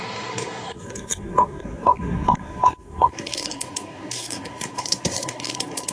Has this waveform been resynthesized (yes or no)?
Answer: yes